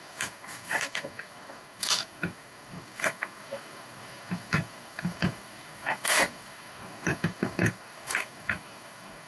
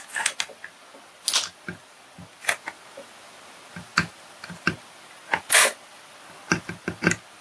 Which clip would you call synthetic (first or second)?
first